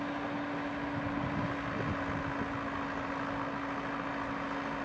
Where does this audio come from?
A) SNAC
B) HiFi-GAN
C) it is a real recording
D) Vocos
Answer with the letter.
C